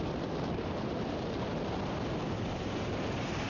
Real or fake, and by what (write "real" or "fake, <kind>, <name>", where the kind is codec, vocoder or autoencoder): real